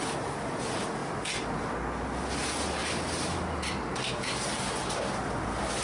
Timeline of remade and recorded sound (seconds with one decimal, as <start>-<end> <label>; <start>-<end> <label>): 0.0-5.8 recorded